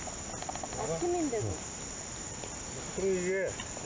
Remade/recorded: recorded